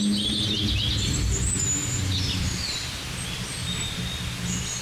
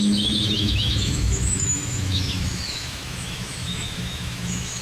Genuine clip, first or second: first